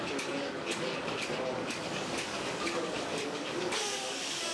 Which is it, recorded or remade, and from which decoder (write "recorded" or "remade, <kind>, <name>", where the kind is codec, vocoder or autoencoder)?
remade, codec, DAC